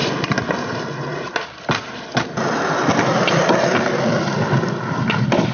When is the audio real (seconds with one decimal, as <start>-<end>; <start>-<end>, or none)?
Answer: 0.0-5.5